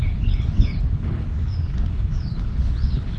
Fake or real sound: fake